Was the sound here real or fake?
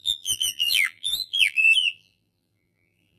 fake